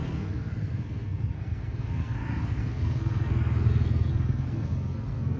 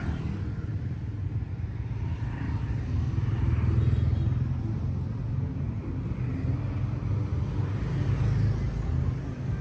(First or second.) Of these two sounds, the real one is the second